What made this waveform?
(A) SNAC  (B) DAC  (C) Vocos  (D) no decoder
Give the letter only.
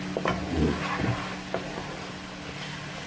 D